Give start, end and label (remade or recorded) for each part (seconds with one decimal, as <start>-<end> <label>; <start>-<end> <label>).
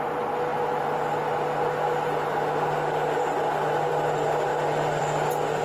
0.0-5.6 recorded